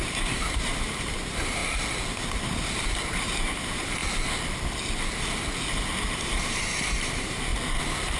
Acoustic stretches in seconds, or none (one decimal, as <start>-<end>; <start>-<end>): 1.6-3.1; 4.0-6.1; 7.5-8.2